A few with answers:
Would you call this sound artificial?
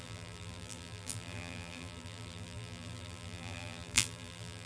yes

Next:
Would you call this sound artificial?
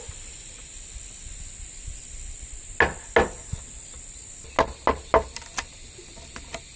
no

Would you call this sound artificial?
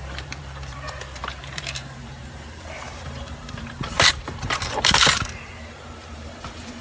yes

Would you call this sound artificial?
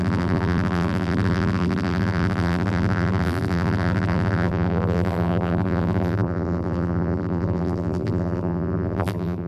yes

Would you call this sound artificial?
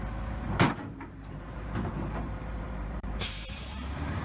yes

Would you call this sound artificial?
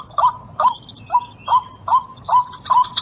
no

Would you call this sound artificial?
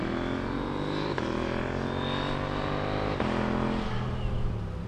no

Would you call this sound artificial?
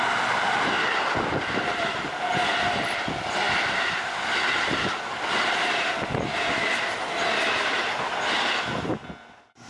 no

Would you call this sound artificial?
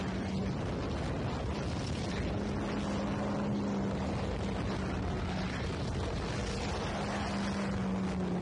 no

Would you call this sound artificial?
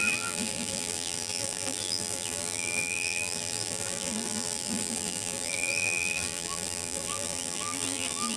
yes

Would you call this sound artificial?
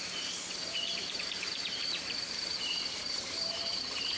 yes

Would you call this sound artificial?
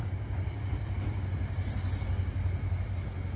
no